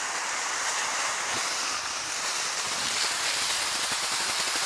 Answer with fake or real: real